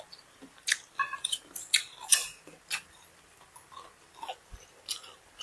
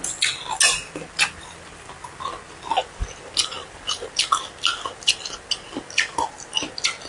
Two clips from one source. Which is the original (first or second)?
second